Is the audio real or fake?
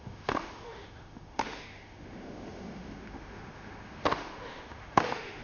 fake